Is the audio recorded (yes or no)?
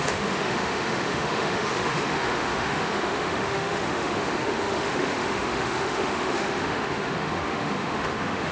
no